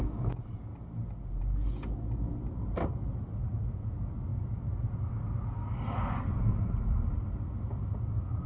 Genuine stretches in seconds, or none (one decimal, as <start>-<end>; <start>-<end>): 0.0-8.5